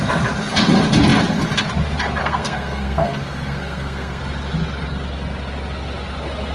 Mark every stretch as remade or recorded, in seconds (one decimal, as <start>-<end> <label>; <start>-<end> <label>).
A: 0.0-2.2 recorded; 2.2-4.2 remade; 4.2-6.5 recorded